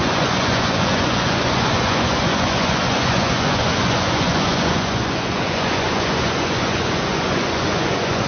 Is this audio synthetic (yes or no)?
yes